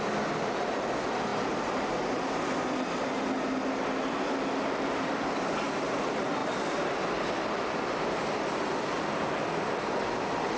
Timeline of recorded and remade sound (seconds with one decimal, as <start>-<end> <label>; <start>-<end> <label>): 0.0-10.6 recorded